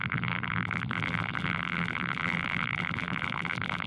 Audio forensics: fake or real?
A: fake